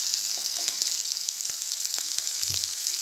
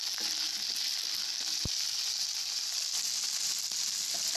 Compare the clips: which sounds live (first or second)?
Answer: second